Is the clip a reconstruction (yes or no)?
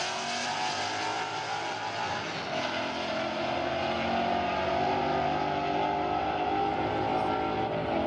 no